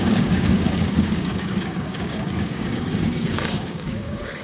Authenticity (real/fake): fake